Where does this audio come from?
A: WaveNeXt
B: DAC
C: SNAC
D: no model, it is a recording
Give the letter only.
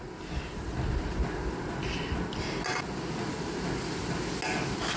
D